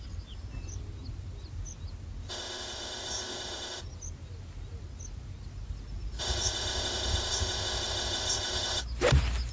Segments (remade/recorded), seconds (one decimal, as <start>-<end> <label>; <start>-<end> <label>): 0.0-2.3 recorded; 2.3-3.8 remade; 3.8-6.2 recorded; 6.2-8.8 remade; 8.8-9.5 recorded